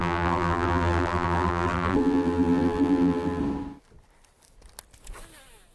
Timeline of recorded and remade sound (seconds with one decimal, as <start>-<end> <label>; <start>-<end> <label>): 0.0-3.4 remade; 3.4-5.7 recorded